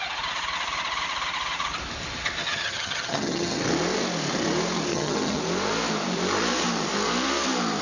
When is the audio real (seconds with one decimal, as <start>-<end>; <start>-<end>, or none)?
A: 0.0-2.4; 3.6-4.9; 5.4-7.8